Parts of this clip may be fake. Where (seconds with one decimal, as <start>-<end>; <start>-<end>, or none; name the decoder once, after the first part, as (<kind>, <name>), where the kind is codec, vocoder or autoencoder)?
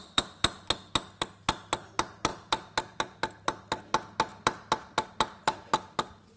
none